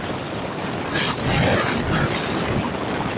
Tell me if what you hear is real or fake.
real